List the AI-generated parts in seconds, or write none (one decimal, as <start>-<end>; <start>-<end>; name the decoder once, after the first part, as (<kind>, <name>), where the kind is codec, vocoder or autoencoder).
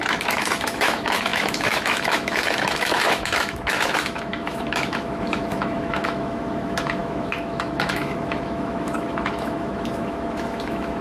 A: 0.0-11.0 (autoencoder, DAC-VAE)